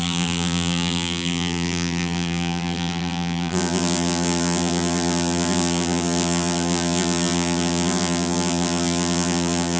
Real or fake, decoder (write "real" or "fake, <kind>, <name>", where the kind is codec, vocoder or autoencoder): fake, vocoder, BigVGAN v2